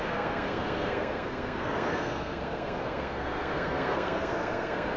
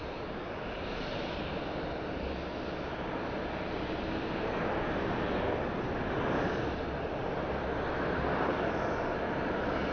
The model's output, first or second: first